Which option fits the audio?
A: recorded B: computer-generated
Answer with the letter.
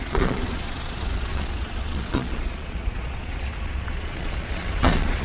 B